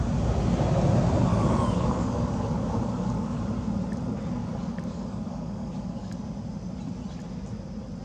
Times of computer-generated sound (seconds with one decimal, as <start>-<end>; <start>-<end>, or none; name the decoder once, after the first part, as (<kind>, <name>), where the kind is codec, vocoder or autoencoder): 1.3-3.4 (codec, DAC); 4.4-6.1